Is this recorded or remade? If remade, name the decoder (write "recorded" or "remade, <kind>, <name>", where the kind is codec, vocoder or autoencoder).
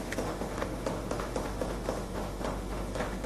remade, autoencoder, DAC-VAE